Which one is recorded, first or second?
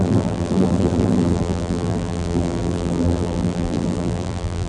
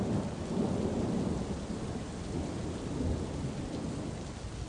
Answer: second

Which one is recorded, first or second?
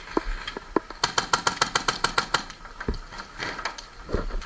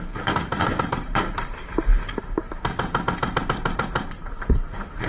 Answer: first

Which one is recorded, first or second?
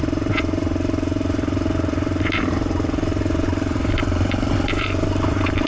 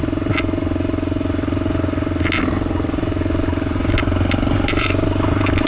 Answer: second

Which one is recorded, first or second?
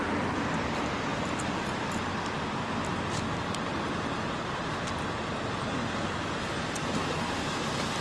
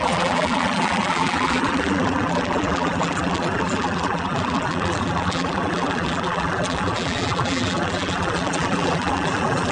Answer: first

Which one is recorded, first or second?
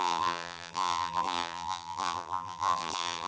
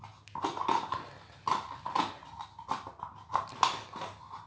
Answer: second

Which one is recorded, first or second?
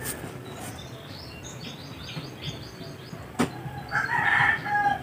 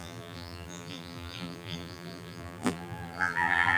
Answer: first